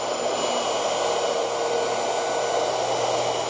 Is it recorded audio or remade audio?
recorded